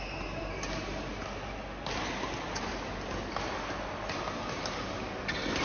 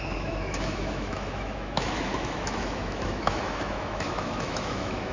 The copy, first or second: second